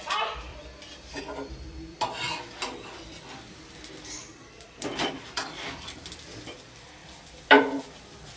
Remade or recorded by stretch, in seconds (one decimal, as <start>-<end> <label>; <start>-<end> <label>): 0.0-0.5 recorded; 0.5-1.2 remade; 1.2-1.9 recorded; 1.9-5.2 remade; 5.2-7.0 recorded; 7.0-7.8 remade; 7.8-8.4 recorded